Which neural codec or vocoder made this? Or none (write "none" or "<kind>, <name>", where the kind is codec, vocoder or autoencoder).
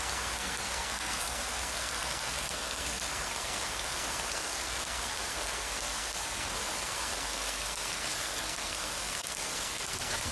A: codec, SNAC